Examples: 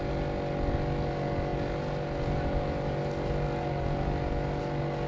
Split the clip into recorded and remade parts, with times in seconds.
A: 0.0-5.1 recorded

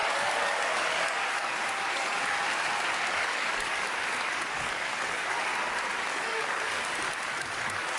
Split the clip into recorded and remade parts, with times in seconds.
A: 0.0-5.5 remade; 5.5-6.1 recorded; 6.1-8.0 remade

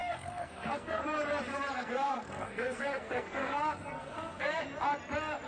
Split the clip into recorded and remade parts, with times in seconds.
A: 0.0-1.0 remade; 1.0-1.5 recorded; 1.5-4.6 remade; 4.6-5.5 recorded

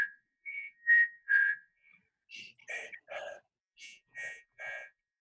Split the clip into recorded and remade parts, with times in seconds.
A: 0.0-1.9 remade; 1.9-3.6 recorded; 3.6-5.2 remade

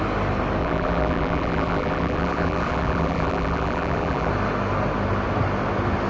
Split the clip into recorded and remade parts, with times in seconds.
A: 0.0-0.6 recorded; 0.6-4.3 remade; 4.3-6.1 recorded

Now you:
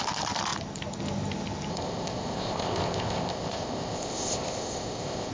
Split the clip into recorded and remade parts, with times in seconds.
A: 0.0-1.7 recorded; 1.7-5.3 remade

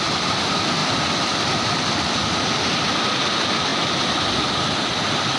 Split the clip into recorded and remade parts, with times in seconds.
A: 0.0-5.4 recorded